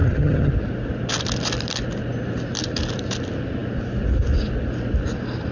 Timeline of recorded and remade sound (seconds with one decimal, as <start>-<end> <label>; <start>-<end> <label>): 0.0-0.5 remade; 0.5-5.5 recorded